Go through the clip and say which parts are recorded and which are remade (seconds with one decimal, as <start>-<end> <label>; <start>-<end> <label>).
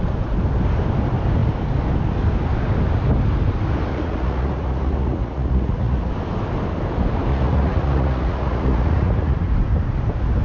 0.0-3.9 recorded; 3.9-6.1 remade; 6.1-7.3 recorded; 7.3-9.5 remade; 9.5-10.4 recorded